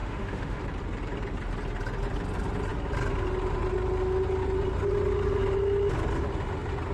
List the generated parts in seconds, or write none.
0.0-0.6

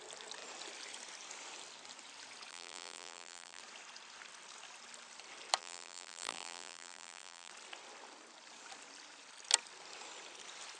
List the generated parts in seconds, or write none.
2.5-3.6; 5.6-7.5

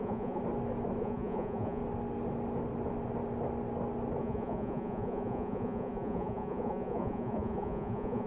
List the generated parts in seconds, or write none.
0.0-0.4; 1.0-1.8; 4.2-8.3

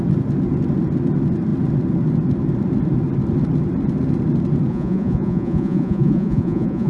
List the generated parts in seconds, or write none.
4.7-6.9

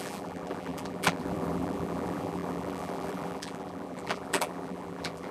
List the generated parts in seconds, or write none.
0.0-5.3

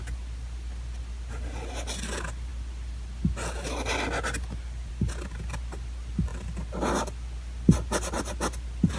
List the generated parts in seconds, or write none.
none

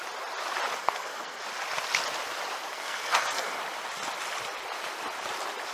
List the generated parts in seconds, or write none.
0.8-1.4; 2.7-3.6

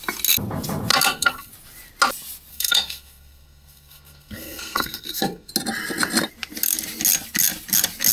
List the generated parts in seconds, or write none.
0.9-1.5; 2.5-5.5